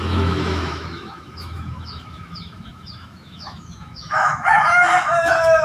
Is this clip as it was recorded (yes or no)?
no